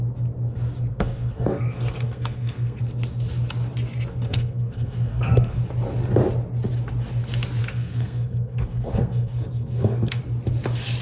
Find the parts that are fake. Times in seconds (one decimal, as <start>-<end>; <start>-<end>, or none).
0.9-2.8; 4.1-5.6; 7.6-10.2